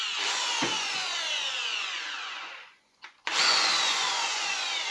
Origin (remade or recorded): remade